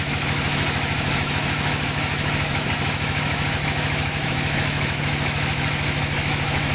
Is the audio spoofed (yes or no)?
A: yes